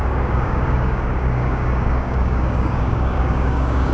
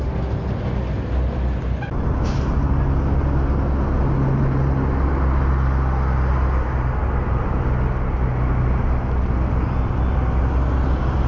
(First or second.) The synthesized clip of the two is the first